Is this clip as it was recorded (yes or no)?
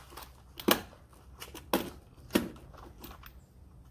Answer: yes